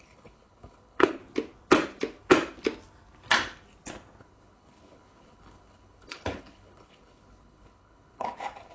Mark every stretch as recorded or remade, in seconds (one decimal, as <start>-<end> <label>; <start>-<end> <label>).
0.0-1.2 remade; 1.2-4.2 recorded; 4.2-8.7 remade